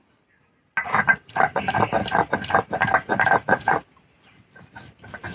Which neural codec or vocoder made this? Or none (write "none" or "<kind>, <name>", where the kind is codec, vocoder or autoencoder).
none